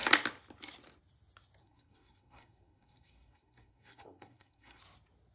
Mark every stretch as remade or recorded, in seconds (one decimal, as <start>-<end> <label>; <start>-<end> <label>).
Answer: 0.0-1.6 recorded; 1.6-4.8 remade; 4.8-5.3 recorded